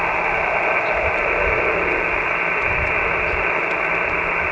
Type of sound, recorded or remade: recorded